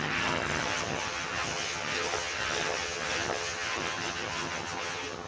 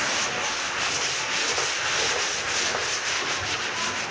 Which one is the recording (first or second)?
second